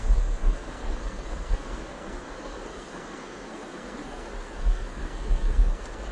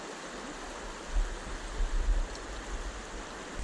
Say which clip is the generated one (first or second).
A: first